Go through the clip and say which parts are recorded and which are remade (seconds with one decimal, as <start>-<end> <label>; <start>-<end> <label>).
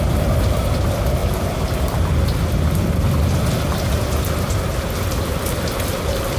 0.0-6.4 recorded